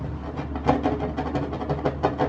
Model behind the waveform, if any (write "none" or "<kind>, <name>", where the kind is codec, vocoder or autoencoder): none